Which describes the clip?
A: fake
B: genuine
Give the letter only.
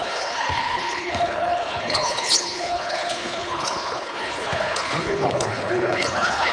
A